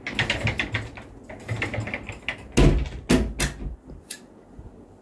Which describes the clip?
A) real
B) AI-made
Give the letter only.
A